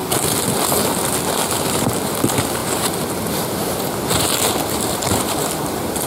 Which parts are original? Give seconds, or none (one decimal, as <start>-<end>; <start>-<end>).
0.0-1.1